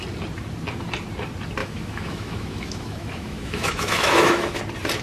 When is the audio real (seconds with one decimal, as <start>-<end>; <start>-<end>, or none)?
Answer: 0.0-1.6; 4.6-5.0